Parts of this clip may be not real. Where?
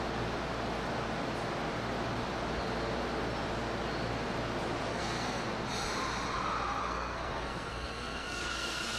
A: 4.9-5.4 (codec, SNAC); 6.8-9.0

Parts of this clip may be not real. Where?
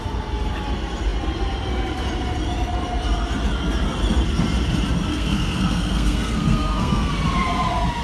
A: 5.1-7.1 (codec, SNAC)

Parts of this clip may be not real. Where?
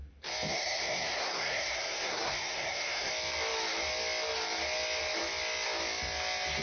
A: 0.5-3.1 (codec, SNAC)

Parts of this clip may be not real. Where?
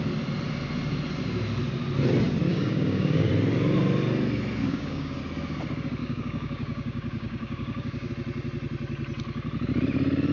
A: 2.5-3.3 (codec, DAC); 4.6-5.2; 6.0-8.1